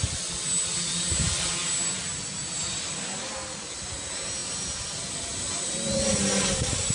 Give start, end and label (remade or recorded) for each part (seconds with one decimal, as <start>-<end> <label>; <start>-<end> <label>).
0.0-6.9 recorded